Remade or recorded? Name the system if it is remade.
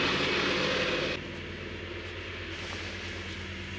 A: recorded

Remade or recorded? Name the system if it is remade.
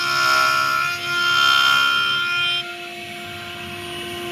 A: recorded